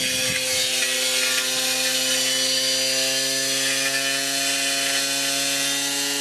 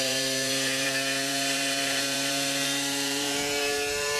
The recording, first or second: first